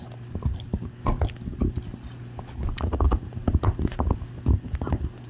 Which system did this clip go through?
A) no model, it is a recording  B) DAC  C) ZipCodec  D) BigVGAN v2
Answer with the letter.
A